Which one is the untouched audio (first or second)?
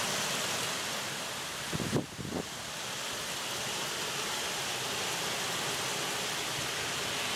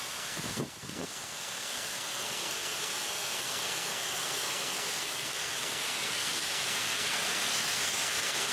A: first